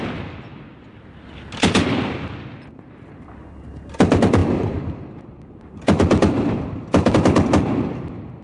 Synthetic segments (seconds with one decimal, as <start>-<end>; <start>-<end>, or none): 4.4-7.1